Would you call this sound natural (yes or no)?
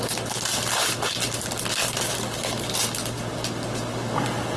yes